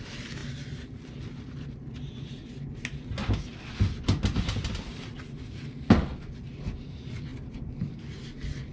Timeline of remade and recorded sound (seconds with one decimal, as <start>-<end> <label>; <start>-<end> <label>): 0.0-8.7 recorded